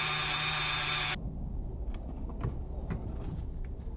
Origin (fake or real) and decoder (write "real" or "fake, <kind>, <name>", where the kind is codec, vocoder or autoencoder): real